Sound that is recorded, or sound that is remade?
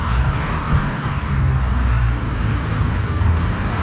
remade